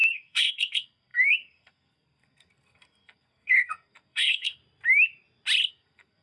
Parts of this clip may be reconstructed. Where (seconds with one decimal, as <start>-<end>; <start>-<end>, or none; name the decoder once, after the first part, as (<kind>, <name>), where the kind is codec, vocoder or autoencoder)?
0.0-4.6 (codec, SNAC); 5.7-6.2